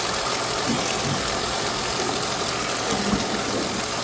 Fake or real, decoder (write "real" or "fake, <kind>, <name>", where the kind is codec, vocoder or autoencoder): real